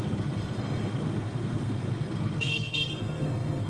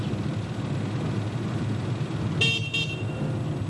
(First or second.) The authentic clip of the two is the second